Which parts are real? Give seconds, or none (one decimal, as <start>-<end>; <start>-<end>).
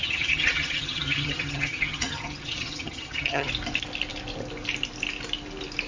3.5-5.9